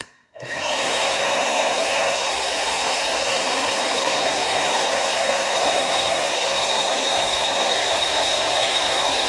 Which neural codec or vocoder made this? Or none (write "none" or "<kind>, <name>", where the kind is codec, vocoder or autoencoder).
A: codec, SNAC